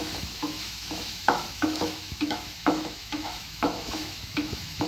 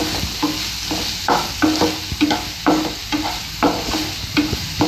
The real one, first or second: second